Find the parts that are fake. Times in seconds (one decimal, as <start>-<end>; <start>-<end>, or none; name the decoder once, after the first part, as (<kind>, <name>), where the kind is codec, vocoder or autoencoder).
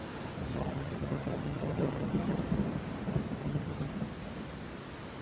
0.5-2.4 (vocoder, HiFi-GAN); 3.4-3.9